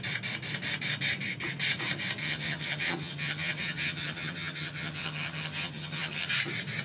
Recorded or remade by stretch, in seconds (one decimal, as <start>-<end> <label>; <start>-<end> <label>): 0.0-2.2 recorded; 2.2-6.3 remade; 6.3-6.8 recorded